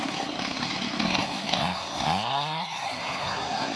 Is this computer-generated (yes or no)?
yes